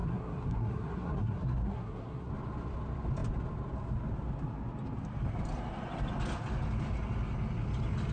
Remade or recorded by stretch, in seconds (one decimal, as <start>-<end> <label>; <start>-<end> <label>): 0.0-2.3 remade; 2.3-8.1 recorded